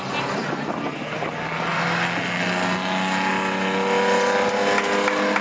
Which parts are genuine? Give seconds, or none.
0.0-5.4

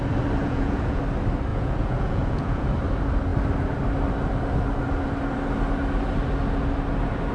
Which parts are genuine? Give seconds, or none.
0.0-0.4; 1.0-1.5; 2.7-7.3

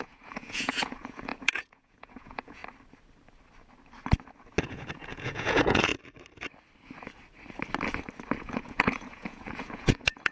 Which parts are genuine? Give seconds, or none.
2.6-4.6; 5.9-8.4

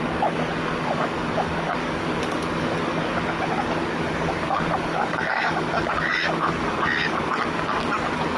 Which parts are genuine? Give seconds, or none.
none

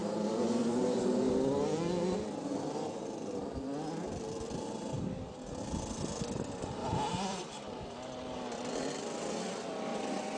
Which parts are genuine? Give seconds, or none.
1.0-6.8; 8.8-9.9

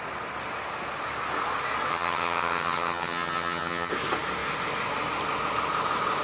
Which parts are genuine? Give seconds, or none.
0.0-1.9; 3.9-6.2